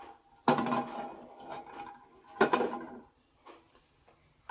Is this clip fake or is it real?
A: real